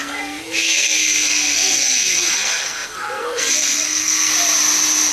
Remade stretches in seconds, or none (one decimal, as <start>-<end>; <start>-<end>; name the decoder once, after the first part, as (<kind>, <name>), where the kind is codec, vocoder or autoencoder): 0.0-4.3 (codec, SNAC)